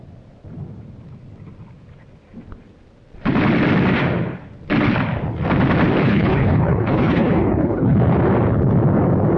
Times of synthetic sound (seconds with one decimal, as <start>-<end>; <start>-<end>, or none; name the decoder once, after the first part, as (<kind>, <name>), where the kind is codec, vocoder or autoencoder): 6.0-8.0 (codec, HILCodec)